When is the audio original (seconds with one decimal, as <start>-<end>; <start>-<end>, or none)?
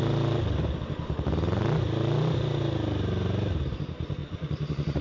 0.0-4.2